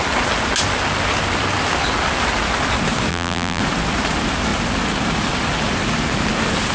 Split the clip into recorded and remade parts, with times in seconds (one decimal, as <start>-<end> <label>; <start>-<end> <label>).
0.0-3.1 recorded; 3.1-3.6 remade; 3.6-6.7 recorded